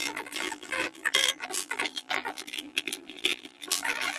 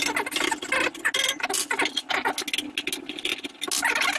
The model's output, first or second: first